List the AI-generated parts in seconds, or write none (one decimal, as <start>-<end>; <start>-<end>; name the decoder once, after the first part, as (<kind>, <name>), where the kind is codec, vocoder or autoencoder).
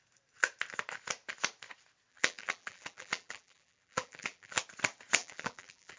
2.1-4.6 (vocoder, BigVGAN v2); 5.2-6.0